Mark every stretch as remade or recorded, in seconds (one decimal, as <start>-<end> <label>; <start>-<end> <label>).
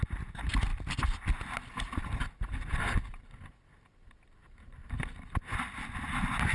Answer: 0.0-6.5 recorded